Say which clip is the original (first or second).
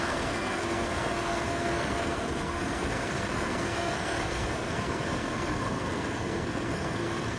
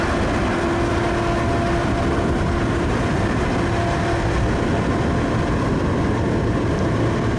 second